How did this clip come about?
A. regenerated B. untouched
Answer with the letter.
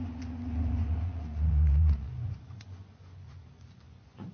A